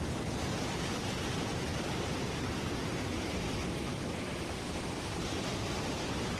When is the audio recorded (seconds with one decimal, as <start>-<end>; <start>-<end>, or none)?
3.9-5.1